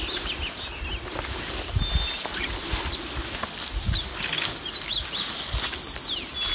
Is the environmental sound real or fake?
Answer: real